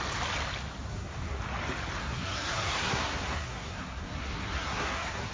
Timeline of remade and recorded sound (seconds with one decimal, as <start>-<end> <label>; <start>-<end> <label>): 0.0-0.9 recorded; 0.9-1.4 remade; 1.4-2.0 recorded; 2.0-5.3 remade